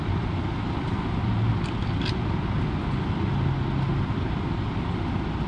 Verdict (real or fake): real